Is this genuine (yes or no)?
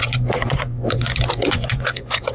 no